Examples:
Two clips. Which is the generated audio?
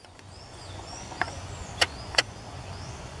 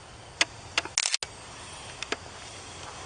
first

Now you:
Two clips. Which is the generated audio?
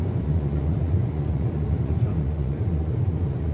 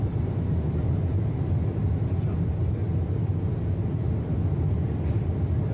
first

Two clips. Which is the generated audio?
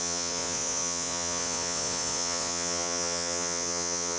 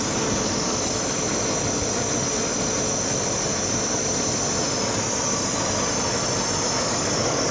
first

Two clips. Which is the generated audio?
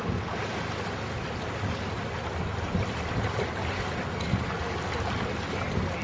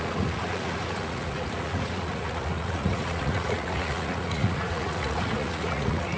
second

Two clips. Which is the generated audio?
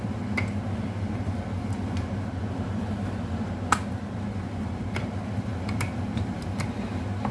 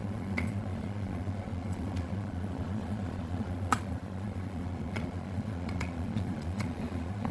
second